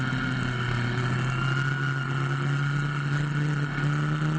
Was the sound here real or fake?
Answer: real